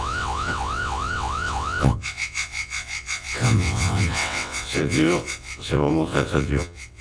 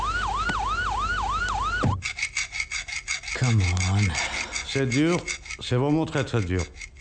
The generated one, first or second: first